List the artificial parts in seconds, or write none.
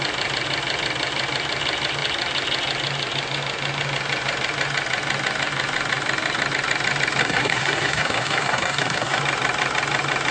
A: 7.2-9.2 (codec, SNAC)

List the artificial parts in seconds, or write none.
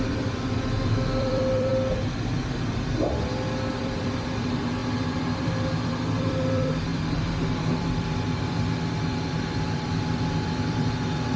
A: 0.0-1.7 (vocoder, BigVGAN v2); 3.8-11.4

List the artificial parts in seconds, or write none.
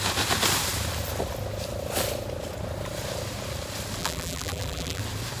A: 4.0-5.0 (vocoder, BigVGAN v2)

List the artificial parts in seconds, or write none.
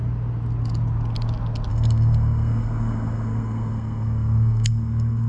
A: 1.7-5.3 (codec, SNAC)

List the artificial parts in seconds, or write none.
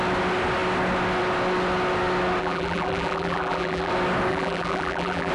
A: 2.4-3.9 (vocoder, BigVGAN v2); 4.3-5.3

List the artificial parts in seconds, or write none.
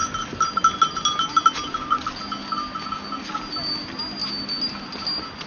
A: none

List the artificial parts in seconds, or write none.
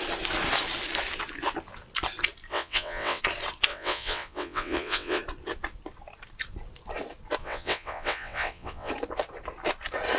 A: 2.5-3.2 (vocoder, WaveNeXt); 3.7-5.2; 7.4-8.9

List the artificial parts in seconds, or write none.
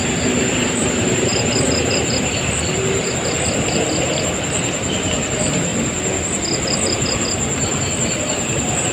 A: 0.0-1.3 (vocoder, BigVGAN v2); 5.3-5.7; 8.2-8.9